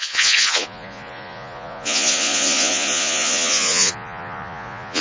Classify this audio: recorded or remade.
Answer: remade